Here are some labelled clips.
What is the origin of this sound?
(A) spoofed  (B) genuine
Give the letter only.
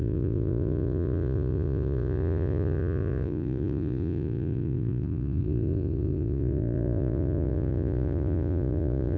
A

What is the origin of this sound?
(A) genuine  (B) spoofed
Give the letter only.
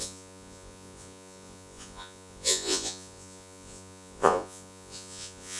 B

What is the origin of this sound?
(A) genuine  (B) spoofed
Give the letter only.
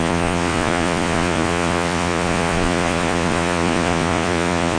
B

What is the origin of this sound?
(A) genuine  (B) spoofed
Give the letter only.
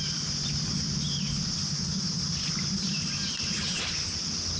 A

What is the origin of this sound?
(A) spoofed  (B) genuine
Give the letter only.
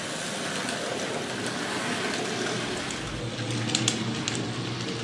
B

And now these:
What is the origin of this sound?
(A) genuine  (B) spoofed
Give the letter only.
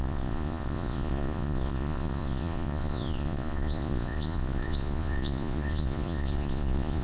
B